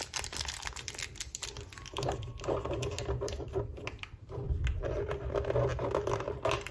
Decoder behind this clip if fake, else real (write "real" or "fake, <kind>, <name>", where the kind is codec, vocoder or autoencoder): fake, vocoder, BigVGAN v2